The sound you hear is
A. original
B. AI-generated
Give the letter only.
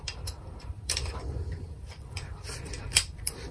B